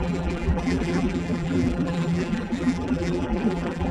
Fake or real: fake